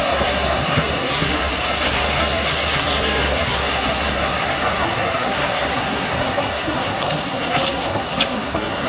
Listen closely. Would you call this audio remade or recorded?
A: remade